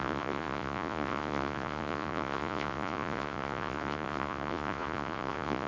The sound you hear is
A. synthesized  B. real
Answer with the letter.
A